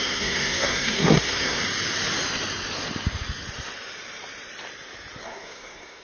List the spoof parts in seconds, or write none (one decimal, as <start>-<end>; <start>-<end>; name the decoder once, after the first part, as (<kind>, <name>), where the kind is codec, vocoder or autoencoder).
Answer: 0.0-1.6 (codec, SNAC); 5.2-6.0